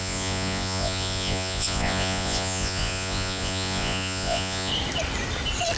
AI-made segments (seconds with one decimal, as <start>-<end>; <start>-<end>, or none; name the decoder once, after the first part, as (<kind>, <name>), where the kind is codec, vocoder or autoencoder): 0.0-4.7 (vocoder, Vocos)